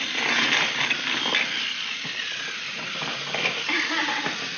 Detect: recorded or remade recorded